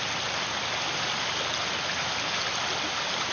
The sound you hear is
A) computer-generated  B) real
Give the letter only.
B